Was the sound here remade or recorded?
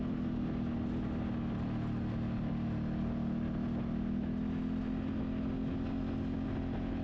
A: recorded